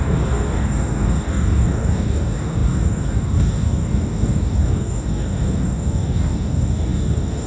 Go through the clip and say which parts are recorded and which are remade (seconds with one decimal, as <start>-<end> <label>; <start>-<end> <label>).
0.0-7.5 remade